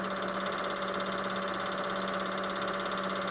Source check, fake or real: real